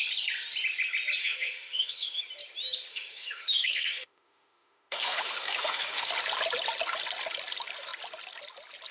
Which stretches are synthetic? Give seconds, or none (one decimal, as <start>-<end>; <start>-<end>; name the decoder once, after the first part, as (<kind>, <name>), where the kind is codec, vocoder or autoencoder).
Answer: 1.2-2.2 (autoencoder, DAC-VAE); 2.9-6.1